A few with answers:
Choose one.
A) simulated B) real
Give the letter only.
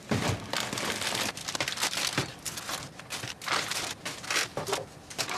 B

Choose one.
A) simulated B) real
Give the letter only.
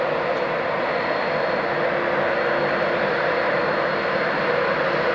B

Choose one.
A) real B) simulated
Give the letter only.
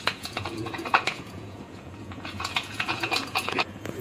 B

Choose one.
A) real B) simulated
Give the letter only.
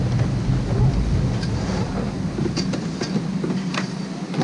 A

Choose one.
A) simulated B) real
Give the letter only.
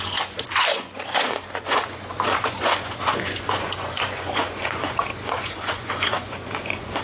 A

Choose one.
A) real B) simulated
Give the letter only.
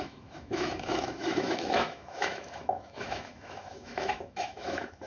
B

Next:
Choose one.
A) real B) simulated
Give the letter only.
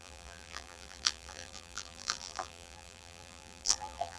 B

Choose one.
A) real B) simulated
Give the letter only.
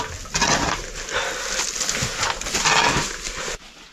A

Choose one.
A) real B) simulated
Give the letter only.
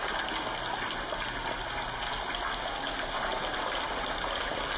A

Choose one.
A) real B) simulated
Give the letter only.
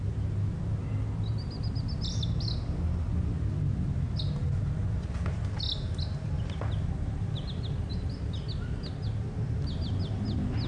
A